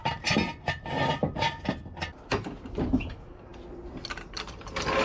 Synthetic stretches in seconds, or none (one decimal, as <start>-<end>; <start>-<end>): none